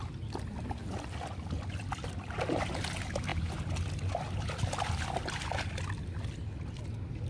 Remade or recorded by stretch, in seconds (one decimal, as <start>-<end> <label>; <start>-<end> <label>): 0.0-7.3 recorded